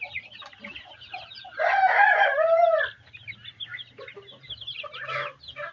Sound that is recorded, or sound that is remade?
recorded